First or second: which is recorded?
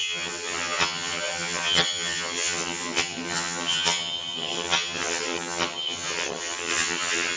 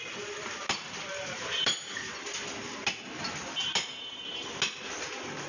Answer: second